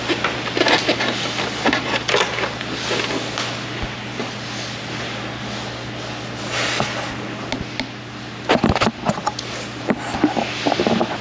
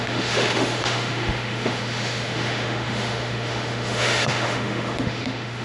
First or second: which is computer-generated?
second